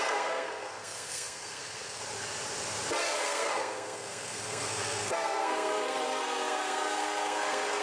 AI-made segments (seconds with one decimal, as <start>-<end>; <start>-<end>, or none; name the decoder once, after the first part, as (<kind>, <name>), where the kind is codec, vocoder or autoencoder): 0.0-2.0 (codec, SNAC); 3.0-7.8